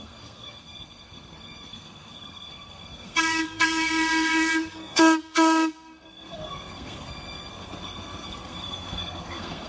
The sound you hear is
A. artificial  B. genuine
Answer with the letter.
A